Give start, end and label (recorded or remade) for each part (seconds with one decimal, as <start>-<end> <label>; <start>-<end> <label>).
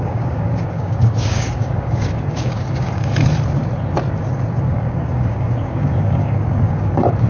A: 0.0-3.1 remade; 3.1-4.6 recorded; 4.6-7.3 remade